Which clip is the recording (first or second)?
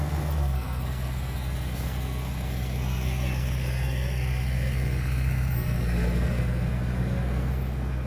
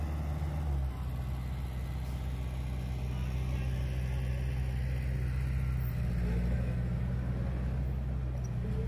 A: second